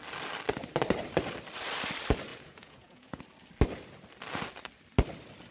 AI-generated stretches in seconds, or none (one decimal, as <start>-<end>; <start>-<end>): 2.3-3.2